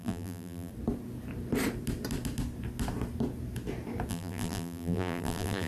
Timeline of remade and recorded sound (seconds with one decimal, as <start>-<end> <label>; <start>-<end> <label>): 0.0-0.7 remade; 0.7-4.1 recorded; 4.1-5.7 remade